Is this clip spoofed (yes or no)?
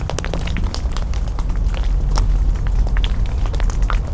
no